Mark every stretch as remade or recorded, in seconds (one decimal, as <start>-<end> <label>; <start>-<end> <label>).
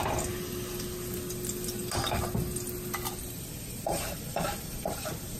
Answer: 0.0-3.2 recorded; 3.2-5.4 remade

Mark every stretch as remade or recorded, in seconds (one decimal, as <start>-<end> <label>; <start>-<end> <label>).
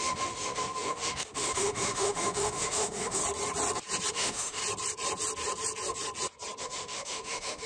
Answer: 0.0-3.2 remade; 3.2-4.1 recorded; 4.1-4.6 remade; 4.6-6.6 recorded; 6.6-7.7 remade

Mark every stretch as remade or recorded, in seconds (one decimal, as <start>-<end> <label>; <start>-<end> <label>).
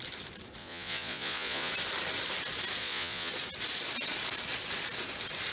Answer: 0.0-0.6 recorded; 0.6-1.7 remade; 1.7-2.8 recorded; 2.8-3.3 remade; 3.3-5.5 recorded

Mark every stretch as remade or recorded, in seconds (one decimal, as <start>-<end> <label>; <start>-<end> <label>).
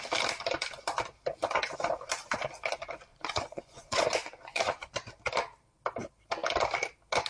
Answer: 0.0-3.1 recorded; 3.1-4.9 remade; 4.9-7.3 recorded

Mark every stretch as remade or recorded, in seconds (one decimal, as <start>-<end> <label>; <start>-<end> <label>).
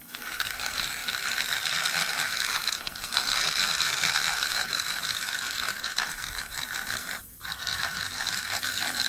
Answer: 0.0-9.1 remade